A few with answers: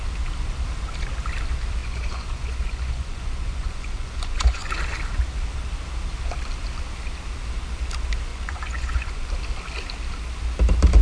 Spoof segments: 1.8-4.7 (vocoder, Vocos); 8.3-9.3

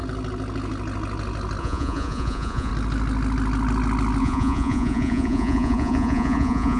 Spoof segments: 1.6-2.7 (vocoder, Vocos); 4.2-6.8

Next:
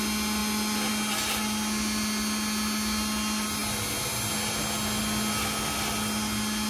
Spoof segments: none

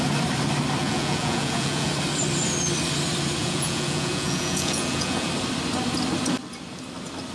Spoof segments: 0.8-1.9 (vocoder, Vocos); 3.4-5.3

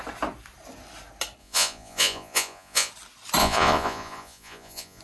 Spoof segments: 1.4-2.9 (vocoder, Vocos); 3.4-5.0

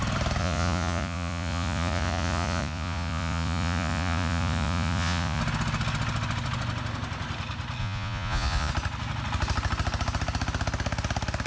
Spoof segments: 0.4-5.4 (vocoder, Vocos); 7.8-8.7